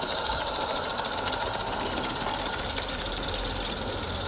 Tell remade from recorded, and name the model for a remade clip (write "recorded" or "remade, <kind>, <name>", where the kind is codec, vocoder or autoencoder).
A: remade, vocoder, BigVGAN v2